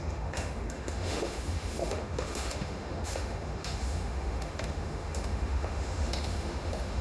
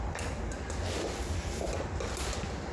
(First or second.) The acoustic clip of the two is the second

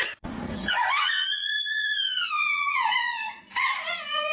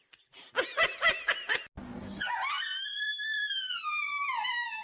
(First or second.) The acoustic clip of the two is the second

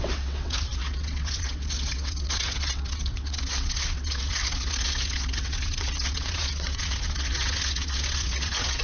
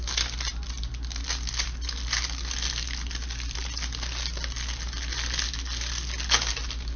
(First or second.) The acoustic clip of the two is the second